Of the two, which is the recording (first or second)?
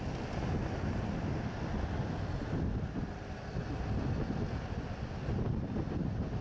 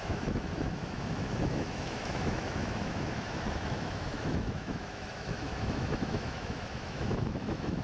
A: first